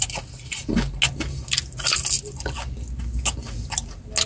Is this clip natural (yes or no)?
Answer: yes